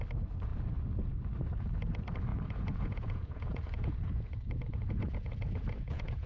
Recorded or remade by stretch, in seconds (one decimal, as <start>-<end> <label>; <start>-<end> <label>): 0.0-2.3 recorded; 2.3-6.3 remade